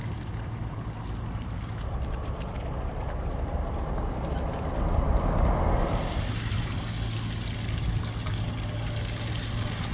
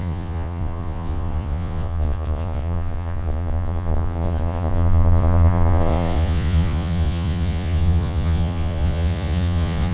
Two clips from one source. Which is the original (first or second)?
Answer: first